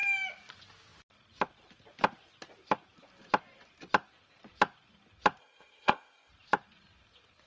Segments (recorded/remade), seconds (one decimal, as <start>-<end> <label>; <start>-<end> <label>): 0.0-5.4 recorded; 5.4-6.3 remade; 6.3-7.5 recorded